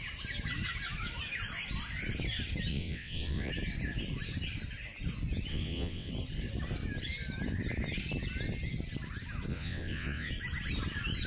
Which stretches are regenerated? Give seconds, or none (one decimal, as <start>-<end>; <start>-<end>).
2.7-3.5; 5.5-6.1; 9.5-10.3